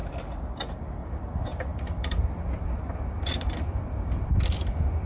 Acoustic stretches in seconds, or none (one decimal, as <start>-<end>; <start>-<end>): 0.8-1.7